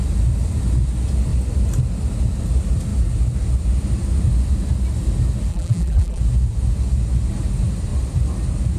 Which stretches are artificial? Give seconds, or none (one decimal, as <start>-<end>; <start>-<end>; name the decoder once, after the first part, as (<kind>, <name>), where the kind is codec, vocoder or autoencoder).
5.5-6.2 (vocoder, BigVGAN v2)